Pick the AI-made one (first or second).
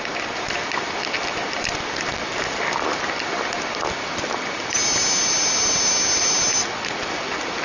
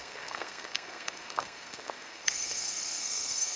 second